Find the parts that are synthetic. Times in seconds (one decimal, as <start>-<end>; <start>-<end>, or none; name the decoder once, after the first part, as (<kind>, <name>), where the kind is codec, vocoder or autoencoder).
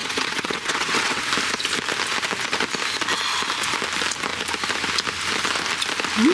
0.0-1.3 (vocoder, WaveNeXt)